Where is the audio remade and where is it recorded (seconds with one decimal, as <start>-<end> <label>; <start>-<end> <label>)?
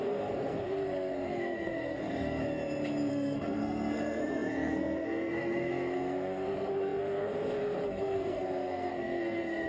0.0-2.4 remade; 2.4-3.1 recorded; 3.1-9.7 remade